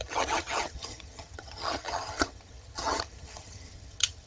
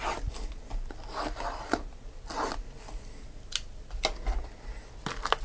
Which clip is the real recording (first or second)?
second